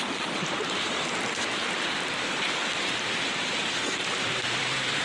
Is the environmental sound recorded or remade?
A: remade